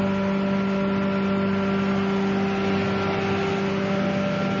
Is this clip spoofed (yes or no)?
no